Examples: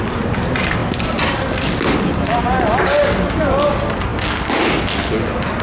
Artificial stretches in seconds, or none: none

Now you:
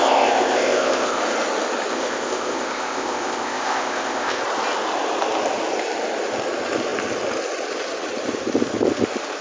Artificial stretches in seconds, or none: 0.0-1.2 (codec, ZipCodec); 1.9-4.4

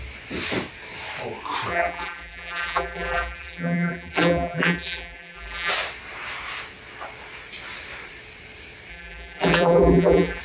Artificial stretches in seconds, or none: 1.7-5.7 (vocoder, BigVGAN v2); 8.9-10.4

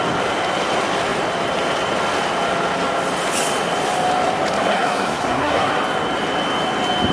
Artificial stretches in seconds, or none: 4.7-5.7 (codec, SNAC)

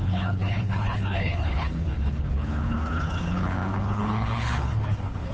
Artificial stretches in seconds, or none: 0.0-5.3 (codec, HILCodec)